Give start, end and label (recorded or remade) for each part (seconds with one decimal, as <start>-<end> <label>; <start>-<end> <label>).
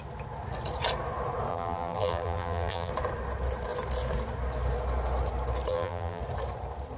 0.0-1.5 recorded; 1.5-2.9 remade; 2.9-5.7 recorded; 5.7-6.2 remade; 6.2-7.0 recorded